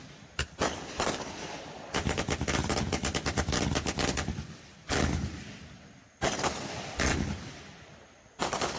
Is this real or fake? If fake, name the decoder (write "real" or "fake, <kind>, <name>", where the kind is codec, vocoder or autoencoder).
fake, vocoder, BigVGAN v2